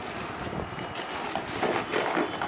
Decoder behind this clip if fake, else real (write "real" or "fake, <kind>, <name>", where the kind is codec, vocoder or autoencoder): real